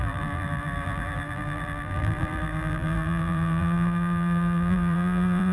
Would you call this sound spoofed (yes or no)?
yes